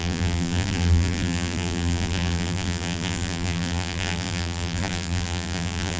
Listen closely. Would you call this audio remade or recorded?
remade